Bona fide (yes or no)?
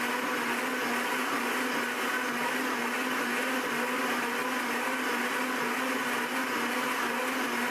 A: yes